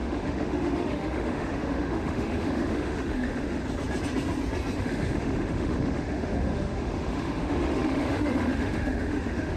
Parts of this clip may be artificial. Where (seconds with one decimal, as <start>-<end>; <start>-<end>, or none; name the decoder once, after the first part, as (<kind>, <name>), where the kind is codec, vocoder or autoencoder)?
0.0-3.6 (autoencoder, DAC-VAE); 4.8-9.6